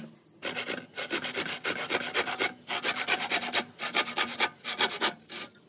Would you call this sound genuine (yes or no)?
yes